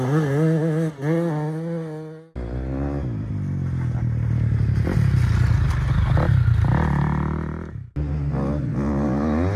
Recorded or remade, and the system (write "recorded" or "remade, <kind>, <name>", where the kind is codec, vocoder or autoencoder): recorded